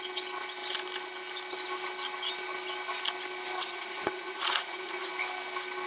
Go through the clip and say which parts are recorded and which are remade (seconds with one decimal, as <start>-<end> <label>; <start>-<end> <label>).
0.0-3.6 recorded; 3.6-5.1 remade; 5.1-5.9 recorded